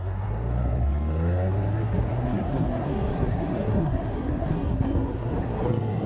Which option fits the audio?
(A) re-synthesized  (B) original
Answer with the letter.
A